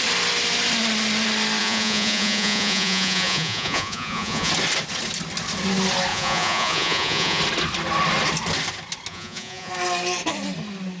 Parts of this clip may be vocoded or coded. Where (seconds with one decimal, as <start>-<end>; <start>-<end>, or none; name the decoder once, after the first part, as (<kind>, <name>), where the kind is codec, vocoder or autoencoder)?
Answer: 1.6-4.5 (vocoder, Vocos); 6.1-7.4; 9.1-9.7